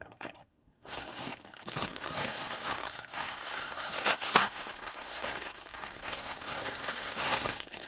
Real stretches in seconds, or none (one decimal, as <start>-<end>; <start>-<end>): none